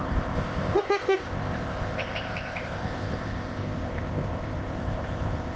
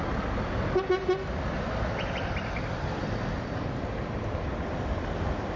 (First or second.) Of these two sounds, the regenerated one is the first